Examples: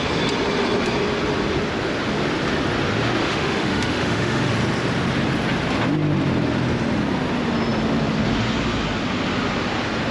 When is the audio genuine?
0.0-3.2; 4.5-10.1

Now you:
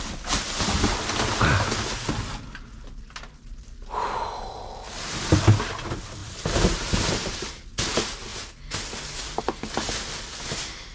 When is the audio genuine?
0.0-6.2; 7.5-10.9

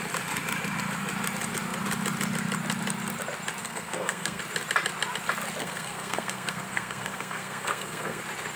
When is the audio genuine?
0.0-3.6; 4.4-5.6; 8.2-8.6

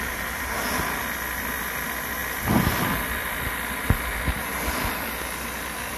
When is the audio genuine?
0.0-6.0